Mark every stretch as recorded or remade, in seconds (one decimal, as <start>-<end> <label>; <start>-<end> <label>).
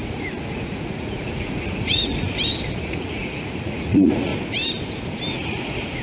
0.0-2.1 remade; 2.1-2.8 recorded; 2.8-4.3 remade; 4.3-5.3 recorded; 5.3-6.0 remade